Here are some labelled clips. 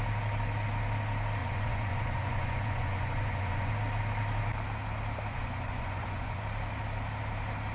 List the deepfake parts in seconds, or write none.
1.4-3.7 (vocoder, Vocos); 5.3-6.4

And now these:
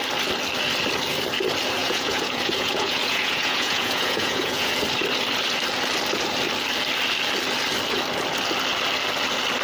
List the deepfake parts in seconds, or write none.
1.8-4.7 (vocoder, Vocos)